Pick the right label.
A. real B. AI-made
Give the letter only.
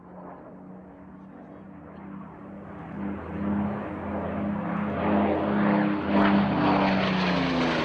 A